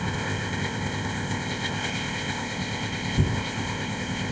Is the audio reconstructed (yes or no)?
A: yes